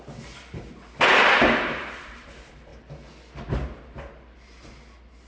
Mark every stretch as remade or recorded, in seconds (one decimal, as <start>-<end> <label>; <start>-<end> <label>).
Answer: 0.0-2.7 remade; 2.7-5.3 recorded